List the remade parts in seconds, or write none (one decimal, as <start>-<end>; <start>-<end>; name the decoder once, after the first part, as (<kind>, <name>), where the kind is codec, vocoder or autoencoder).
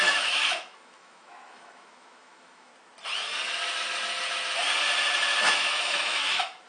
0.0-2.7 (autoencoder, DAC-VAE); 5.4-6.7